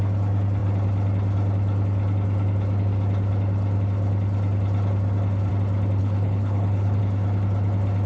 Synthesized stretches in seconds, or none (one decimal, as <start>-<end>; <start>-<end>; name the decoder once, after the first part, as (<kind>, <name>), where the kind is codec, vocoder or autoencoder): 6.0-7.0 (codec, HILCodec)